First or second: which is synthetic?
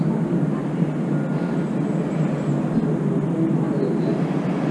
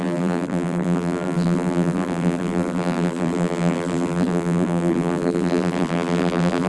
second